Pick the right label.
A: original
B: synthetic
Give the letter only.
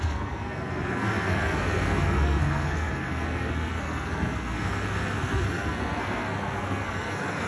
B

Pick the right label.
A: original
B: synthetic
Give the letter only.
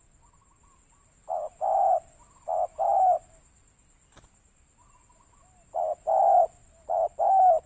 A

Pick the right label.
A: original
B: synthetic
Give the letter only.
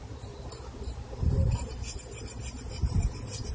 A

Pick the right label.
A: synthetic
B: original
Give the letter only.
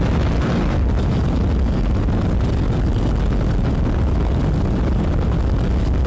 B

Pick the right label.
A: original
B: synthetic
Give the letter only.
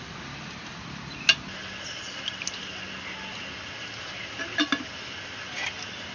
A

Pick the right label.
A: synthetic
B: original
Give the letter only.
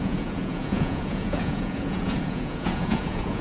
A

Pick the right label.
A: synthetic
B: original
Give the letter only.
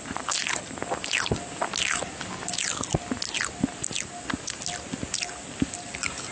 B